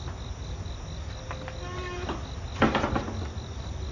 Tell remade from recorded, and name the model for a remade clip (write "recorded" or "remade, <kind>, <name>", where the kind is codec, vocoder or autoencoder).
recorded